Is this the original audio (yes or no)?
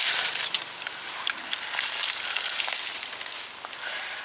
yes